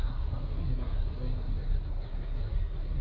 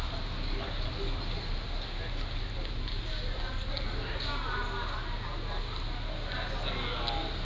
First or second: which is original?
second